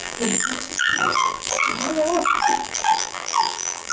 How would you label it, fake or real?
fake